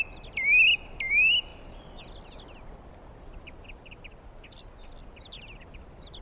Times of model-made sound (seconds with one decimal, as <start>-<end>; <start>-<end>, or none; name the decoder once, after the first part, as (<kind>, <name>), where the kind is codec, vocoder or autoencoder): none